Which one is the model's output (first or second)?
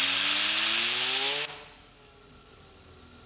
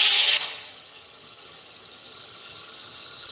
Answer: second